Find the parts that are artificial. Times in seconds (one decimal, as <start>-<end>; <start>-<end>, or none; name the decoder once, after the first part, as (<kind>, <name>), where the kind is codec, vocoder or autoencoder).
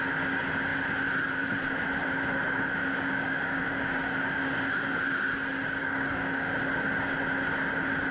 2.8-5.0 (codec, DAC); 5.8-6.6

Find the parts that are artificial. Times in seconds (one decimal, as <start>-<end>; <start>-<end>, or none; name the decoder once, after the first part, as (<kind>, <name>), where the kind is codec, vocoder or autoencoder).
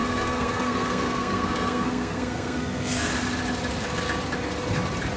0.0-3.1 (codec, SNAC)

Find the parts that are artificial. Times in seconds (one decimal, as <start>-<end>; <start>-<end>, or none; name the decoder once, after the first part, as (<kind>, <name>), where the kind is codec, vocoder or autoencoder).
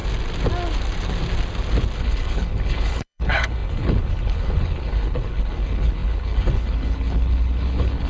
2.0-8.1 (codec, HILCodec)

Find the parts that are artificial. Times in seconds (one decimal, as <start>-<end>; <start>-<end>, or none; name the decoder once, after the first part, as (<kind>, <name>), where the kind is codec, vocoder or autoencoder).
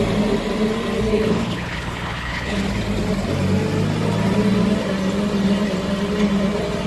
1.1-2.6 (codec, HILCodec)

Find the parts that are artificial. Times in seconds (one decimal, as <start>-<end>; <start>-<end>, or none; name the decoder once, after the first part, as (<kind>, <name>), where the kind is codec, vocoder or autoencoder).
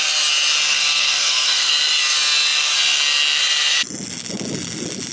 0.7-1.7 (codec, SNAC)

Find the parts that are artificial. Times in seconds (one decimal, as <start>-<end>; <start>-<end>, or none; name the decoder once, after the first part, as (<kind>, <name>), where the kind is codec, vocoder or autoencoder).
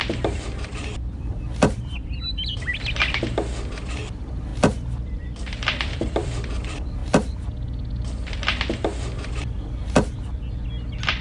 0.0-2.7 (vocoder, BigVGAN v2); 3.9-7.0; 9.4-11.2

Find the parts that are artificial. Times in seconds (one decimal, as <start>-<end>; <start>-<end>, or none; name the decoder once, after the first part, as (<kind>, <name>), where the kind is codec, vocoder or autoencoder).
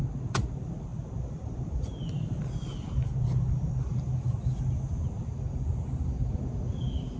none